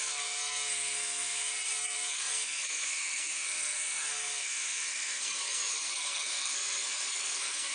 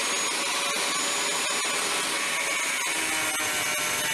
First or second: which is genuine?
second